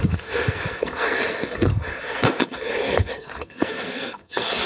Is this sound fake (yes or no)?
yes